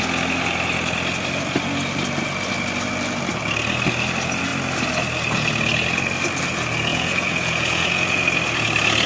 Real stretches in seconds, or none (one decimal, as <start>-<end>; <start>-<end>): 0.0-6.9; 8.2-9.1